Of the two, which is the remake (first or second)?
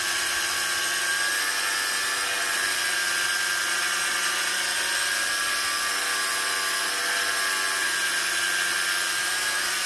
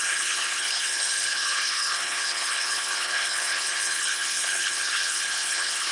second